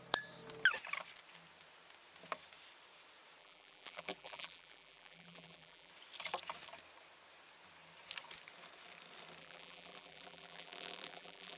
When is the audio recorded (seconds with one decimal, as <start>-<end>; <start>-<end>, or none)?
0.0-3.4; 5.9-9.4